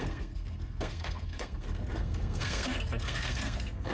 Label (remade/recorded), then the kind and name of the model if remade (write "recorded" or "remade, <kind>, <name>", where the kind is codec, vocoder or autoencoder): remade, codec, SNAC